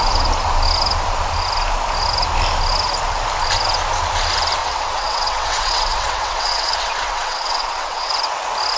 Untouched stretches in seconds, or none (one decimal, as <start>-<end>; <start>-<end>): 0.0-4.6; 8.1-8.8